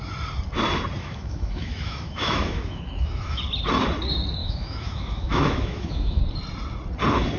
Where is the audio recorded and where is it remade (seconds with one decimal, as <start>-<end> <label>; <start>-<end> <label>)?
0.0-1.0 recorded; 1.0-3.4 remade; 3.4-4.4 recorded; 4.4-6.2 remade; 6.2-7.4 recorded